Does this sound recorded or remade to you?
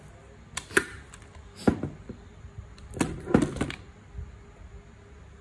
recorded